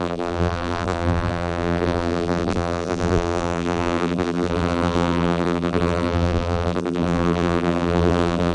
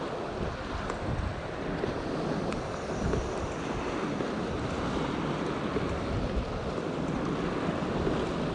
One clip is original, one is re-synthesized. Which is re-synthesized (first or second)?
first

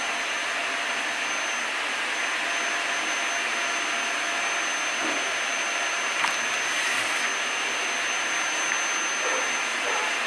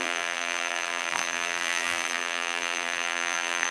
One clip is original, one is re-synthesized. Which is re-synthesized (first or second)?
second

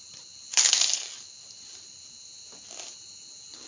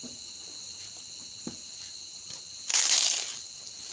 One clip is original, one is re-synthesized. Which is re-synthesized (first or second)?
second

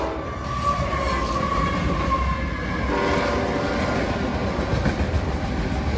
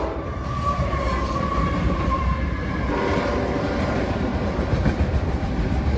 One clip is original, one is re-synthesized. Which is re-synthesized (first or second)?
second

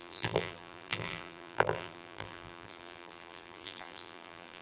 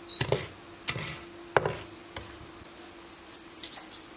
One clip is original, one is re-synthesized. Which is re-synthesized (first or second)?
first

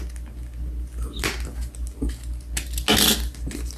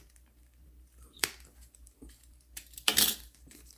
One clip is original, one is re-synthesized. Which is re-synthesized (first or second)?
second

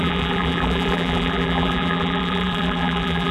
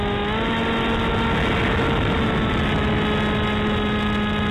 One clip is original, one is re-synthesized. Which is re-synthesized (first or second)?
first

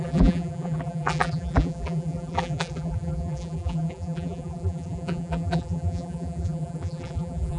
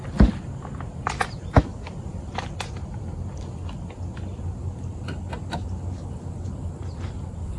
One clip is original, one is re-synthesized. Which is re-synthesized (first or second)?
first